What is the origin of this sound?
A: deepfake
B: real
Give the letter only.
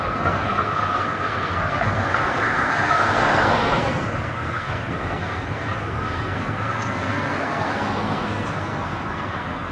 A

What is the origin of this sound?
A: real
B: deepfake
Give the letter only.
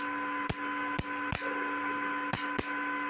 A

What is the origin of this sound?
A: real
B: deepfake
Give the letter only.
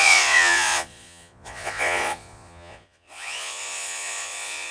B